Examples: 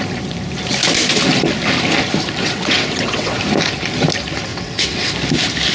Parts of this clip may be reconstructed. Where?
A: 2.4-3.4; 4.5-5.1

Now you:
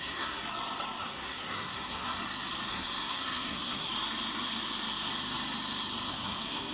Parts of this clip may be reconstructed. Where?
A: 0.0-0.4; 1.0-2.2; 2.7-3.9; 6.1-6.7

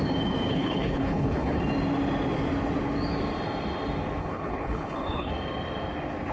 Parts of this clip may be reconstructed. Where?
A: 0.5-1.6; 4.2-5.3

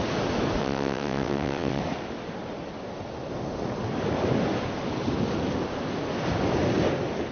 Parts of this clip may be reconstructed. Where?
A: 0.6-1.8

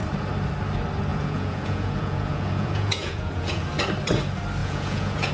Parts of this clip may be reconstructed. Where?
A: 1.1-3.7; 4.6-5.3

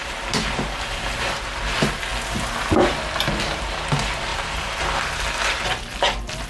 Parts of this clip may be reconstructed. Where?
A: 0.0-1.5; 4.3-5.0